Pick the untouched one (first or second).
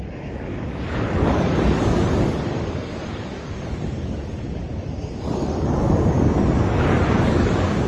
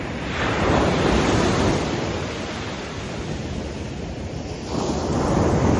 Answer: second